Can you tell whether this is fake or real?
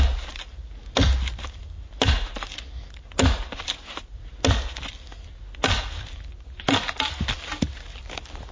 real